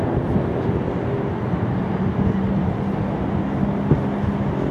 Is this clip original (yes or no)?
yes